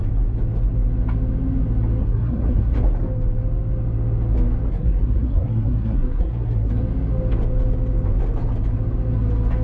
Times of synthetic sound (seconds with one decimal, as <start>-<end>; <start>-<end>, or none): 2.0-2.8; 4.7-6.7